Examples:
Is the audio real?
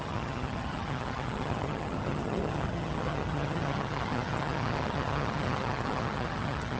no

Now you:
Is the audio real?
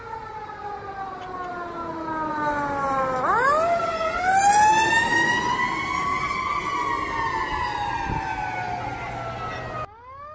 yes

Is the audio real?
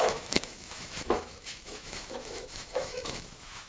no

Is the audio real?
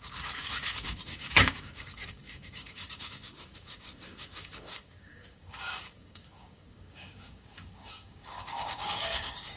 no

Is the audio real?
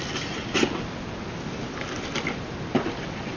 yes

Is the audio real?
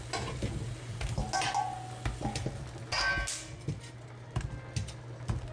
yes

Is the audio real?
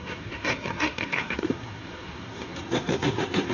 no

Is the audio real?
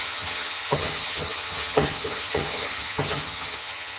no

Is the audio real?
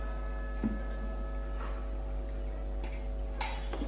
yes